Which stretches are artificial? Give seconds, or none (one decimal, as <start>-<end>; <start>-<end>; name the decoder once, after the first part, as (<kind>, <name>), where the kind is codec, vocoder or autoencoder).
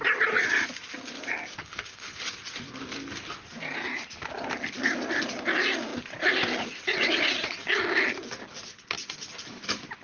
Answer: 1.6-2.2 (codec, HILCodec)